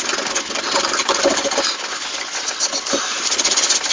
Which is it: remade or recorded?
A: recorded